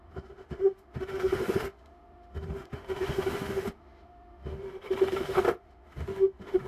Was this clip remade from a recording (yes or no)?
yes